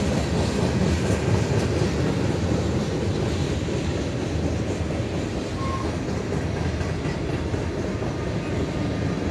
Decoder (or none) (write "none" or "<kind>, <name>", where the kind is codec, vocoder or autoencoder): none